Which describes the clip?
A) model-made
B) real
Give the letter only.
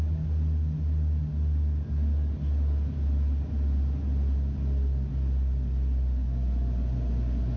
B